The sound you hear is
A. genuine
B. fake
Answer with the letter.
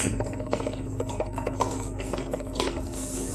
B